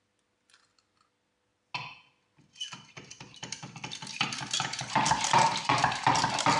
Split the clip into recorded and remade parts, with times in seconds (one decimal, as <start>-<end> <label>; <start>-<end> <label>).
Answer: 0.0-6.6 recorded